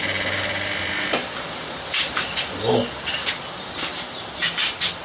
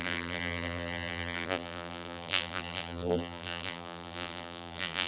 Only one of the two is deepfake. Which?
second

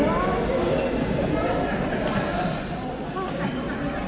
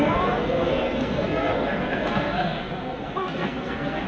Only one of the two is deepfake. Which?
second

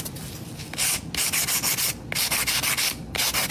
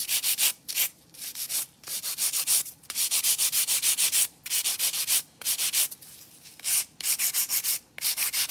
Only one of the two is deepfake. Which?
second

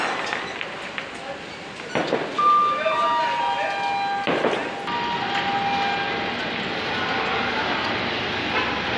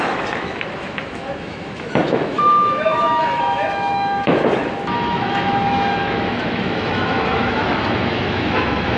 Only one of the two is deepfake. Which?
second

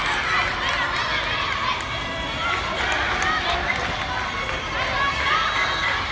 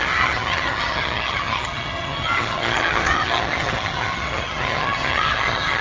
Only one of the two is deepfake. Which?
second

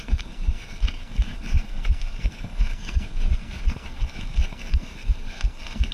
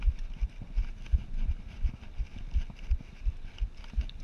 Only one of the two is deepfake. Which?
first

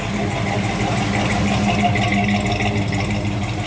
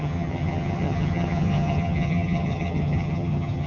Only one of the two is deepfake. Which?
second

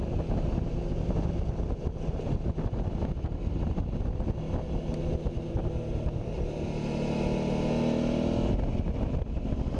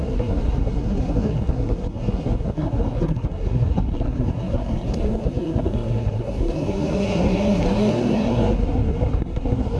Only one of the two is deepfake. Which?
second